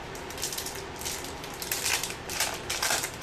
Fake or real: fake